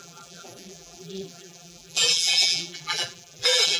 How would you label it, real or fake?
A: fake